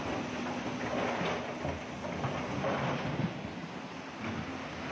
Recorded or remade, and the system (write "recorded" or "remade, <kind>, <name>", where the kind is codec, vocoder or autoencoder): recorded